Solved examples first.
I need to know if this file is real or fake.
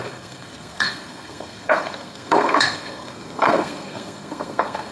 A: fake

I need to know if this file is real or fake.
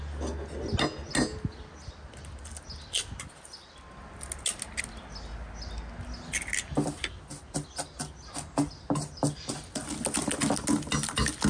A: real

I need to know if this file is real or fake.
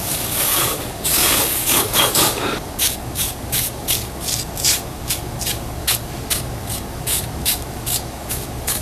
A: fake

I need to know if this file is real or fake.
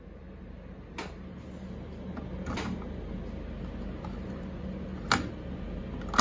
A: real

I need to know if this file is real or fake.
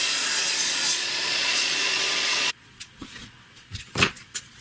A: fake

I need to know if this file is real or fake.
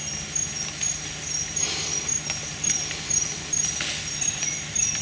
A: real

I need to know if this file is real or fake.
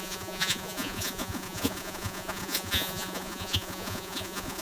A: fake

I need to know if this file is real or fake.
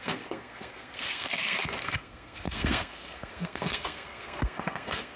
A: fake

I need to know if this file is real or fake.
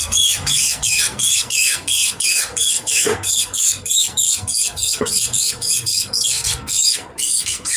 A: fake